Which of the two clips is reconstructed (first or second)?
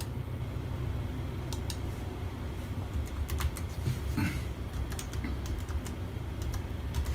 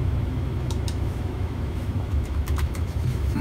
second